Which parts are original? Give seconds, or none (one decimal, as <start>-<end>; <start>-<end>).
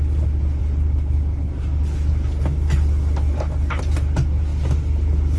0.0-5.4